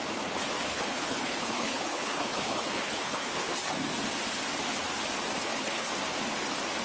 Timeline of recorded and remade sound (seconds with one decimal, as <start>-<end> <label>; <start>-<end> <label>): 0.0-0.7 recorded; 0.7-3.5 remade; 3.5-5.4 recorded; 5.4-5.9 remade; 5.9-6.8 recorded

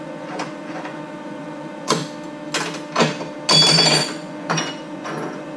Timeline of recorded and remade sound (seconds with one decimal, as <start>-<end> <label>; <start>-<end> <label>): 0.0-2.0 remade; 2.0-3.7 recorded; 3.7-5.6 remade

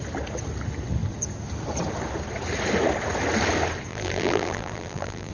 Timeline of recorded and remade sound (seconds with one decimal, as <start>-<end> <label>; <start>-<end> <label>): 0.0-3.9 recorded; 3.9-5.3 remade

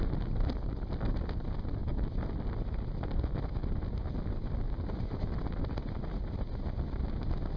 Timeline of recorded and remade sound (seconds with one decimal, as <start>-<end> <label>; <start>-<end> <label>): 0.0-7.6 recorded

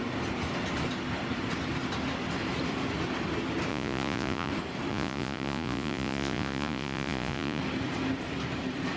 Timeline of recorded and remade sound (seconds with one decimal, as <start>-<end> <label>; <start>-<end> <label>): 0.0-3.7 recorded; 3.7-4.5 remade; 4.5-4.9 recorded; 4.9-7.6 remade; 7.6-9.0 recorded

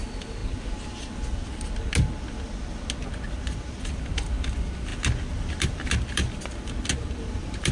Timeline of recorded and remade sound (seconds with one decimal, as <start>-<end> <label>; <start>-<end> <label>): 0.0-0.4 remade; 0.4-3.8 recorded; 3.8-7.7 remade